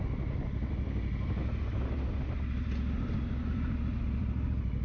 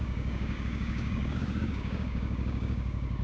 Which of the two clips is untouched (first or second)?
first